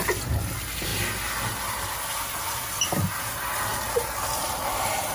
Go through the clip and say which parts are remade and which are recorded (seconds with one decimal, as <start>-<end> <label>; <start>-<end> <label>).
0.0-3.7 recorded; 3.7-5.1 remade